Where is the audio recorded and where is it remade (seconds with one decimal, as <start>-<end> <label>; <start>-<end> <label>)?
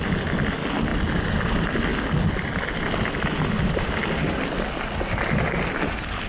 0.0-6.3 recorded